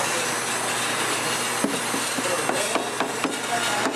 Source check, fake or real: real